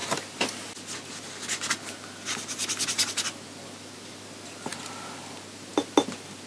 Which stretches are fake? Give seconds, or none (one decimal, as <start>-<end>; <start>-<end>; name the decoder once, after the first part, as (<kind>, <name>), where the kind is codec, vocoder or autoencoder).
none

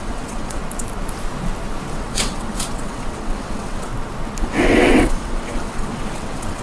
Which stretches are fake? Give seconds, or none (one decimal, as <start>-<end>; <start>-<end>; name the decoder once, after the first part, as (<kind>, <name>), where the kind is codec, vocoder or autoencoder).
0.0-0.6 (vocoder, WaveNeXt); 1.9-3.9; 4.4-6.6